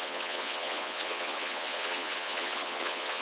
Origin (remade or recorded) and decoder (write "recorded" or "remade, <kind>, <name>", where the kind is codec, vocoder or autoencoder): remade, vocoder, Vocos